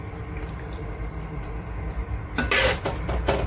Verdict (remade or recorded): remade